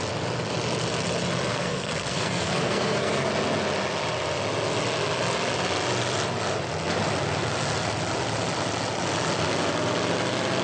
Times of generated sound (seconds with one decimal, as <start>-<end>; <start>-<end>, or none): 1.5-3.3

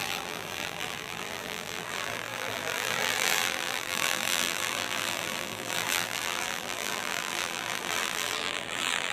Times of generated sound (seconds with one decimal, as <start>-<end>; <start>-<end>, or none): 0.0-9.1

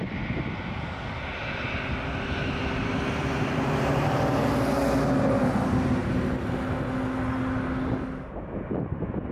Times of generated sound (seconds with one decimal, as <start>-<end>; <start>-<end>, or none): none

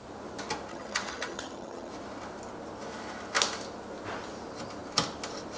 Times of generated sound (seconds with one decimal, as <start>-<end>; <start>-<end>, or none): 0.7-1.9